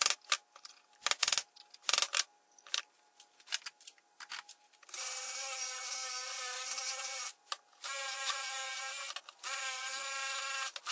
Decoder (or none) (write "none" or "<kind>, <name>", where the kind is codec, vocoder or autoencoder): none